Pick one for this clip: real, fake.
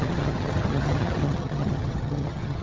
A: fake